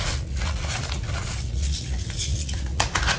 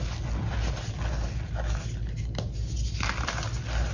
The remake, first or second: first